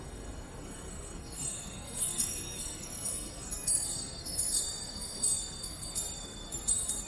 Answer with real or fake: fake